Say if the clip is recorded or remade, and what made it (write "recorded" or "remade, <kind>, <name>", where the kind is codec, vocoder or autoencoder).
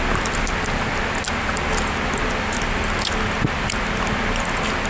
recorded